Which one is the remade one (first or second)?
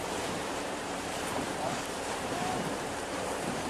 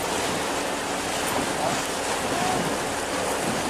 first